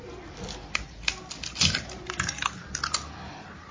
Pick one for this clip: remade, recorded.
recorded